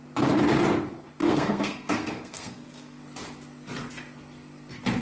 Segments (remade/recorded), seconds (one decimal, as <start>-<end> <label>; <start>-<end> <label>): 0.0-1.2 recorded; 1.2-3.0 remade; 3.0-5.0 recorded